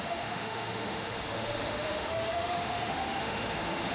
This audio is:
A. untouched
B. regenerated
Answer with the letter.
B